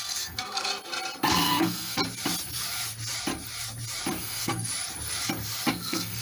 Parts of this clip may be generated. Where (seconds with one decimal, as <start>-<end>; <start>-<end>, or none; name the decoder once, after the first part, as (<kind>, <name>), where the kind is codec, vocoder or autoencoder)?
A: 0.0-0.7 (codec, SNAC); 1.3-2.0; 4.2-4.7; 5.7-6.2